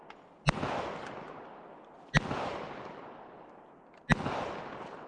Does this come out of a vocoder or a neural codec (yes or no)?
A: no